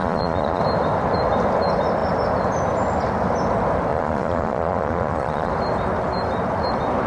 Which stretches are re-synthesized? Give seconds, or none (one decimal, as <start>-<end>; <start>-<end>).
0.0-0.6; 3.9-5.5